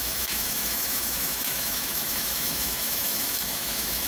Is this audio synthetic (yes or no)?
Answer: yes